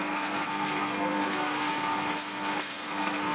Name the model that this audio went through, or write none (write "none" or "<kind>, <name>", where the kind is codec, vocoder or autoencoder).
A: codec, SNAC